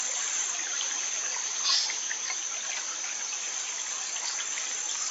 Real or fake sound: real